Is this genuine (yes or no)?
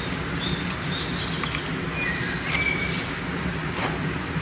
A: yes